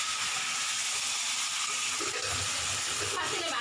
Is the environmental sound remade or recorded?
recorded